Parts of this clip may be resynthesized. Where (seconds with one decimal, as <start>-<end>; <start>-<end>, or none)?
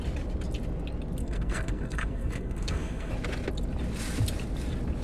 1.2-3.1